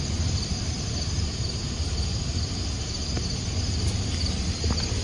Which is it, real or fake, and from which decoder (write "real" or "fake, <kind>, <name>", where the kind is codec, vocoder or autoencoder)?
real